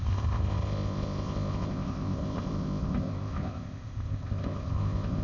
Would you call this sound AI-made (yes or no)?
yes